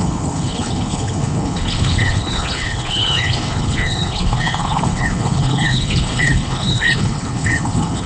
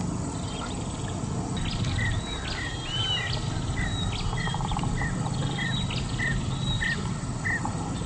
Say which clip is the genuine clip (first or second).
second